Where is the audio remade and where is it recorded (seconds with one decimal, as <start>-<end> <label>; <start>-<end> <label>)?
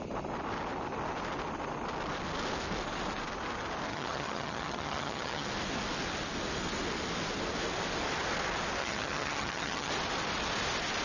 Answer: 0.0-3.9 recorded; 3.9-5.5 remade; 5.5-8.8 recorded; 8.8-9.9 remade; 9.9-11.0 recorded